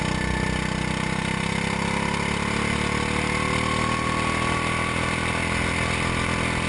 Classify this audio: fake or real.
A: real